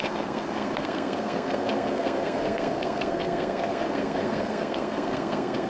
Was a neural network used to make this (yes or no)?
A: yes